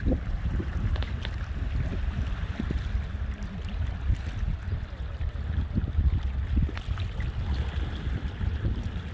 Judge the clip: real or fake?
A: real